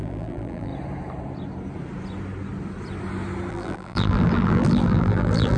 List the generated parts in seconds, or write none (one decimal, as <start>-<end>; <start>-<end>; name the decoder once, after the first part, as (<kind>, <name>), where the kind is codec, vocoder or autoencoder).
0.0-0.7 (vocoder, BigVGAN v2); 3.5-5.6